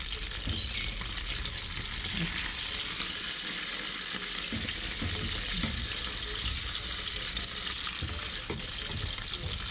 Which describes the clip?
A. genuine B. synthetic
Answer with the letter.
A